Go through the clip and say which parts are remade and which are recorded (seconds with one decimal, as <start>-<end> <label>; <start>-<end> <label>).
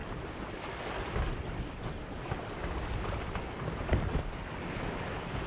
0.0-5.5 recorded